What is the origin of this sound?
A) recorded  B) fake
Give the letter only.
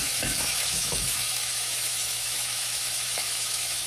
B